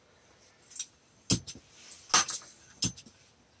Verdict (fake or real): real